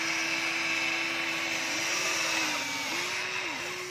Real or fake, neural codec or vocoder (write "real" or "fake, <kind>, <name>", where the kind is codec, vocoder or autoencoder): real